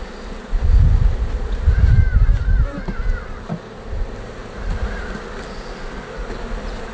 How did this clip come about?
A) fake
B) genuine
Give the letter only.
B